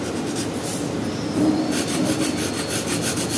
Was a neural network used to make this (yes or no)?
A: no